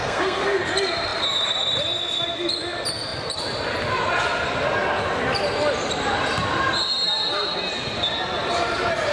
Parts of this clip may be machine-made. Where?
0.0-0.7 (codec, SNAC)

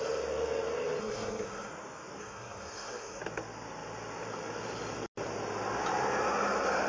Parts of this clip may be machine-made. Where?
1.0-1.7 (codec, SNAC); 2.2-3.2

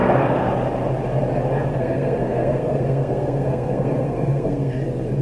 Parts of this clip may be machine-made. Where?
0.0-0.5 (codec, SNAC); 1.7-4.8

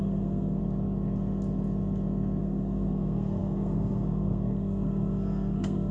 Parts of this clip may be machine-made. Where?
0.0-0.6 (codec, SNAC); 2.4-5.9